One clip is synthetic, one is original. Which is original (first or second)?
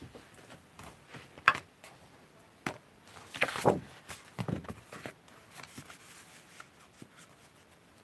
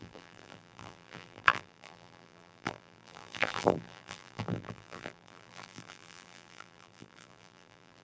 first